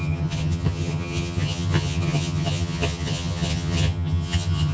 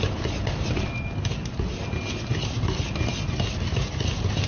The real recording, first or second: second